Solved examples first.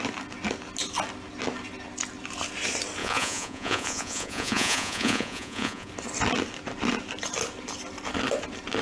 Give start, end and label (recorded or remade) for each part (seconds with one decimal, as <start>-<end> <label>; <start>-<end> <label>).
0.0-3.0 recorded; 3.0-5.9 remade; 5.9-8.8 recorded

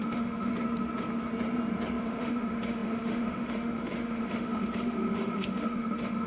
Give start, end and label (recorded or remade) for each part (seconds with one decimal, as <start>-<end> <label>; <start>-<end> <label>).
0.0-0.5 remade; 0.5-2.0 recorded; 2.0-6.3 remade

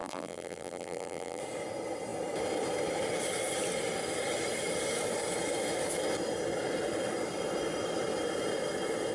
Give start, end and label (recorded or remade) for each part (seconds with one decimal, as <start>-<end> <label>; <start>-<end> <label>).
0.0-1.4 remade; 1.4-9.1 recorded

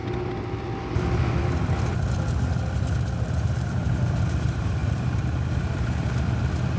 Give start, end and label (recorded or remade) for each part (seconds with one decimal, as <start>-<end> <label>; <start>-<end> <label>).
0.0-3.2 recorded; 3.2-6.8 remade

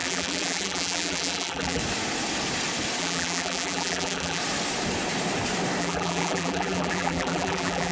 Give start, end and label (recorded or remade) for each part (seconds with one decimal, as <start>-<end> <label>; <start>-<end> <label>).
0.0-1.8 remade; 1.8-3.0 recorded; 3.0-4.4 remade; 4.4-5.8 recorded; 5.8-7.9 remade